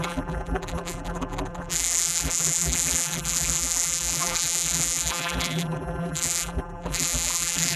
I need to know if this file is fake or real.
fake